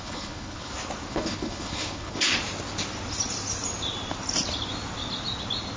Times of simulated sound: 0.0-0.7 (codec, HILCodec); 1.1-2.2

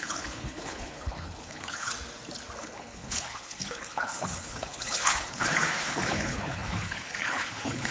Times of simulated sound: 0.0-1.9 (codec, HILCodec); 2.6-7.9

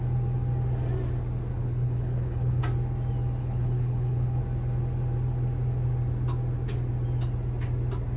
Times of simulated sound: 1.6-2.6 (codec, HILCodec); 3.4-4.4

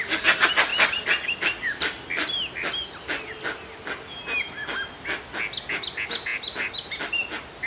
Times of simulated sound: none